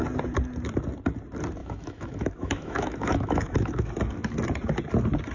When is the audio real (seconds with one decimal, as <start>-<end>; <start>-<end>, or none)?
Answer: 0.0-1.6; 3.9-5.3